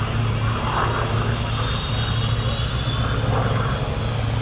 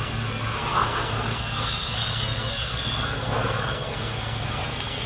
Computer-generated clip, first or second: second